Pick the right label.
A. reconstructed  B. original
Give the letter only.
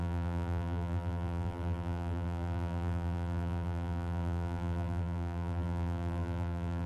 A